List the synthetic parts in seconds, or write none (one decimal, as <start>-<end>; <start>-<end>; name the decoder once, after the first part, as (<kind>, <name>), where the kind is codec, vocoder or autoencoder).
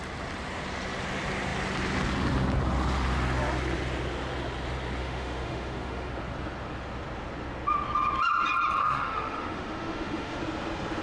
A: 5.0-6.1 (autoencoder, DAC-VAE); 8.8-10.4